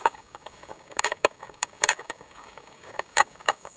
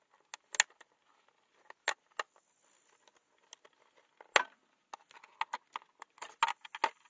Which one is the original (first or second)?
second